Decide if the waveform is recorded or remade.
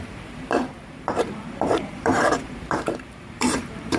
remade